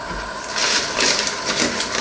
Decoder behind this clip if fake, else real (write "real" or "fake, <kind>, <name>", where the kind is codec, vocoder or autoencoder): real